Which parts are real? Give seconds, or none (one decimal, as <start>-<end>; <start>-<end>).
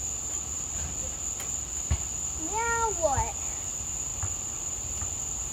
0.0-4.1; 5.0-5.5